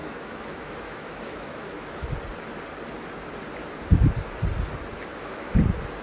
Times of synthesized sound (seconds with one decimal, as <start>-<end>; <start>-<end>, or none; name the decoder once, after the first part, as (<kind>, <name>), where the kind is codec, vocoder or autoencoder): 0.0-2.1 (autoencoder, DAC-VAE); 5.1-5.6